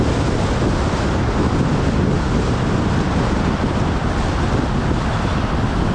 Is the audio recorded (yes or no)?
yes